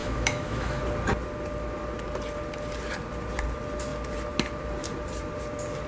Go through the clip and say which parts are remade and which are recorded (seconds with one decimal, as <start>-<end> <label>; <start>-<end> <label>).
0.0-0.8 remade; 0.8-5.9 recorded